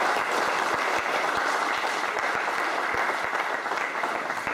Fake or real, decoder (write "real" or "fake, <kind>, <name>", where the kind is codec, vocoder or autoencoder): real